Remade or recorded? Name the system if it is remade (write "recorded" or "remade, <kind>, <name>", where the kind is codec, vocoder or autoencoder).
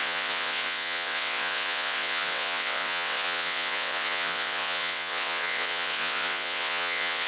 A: remade, vocoder, WaveNeXt